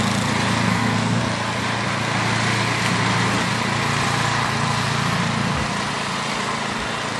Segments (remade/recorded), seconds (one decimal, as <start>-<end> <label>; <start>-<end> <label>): 0.0-0.7 recorded; 0.7-1.2 remade; 1.2-7.2 recorded